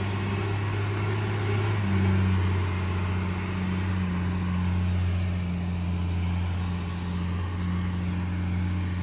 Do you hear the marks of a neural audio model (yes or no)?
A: no